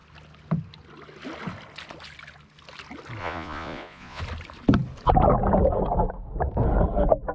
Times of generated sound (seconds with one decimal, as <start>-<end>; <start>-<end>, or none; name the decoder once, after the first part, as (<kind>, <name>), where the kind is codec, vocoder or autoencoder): 3.2-4.2 (vocoder, Vocos)